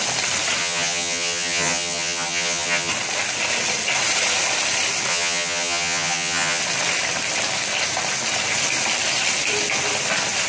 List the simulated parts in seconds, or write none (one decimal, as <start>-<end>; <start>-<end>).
0.6-2.9; 5.1-6.6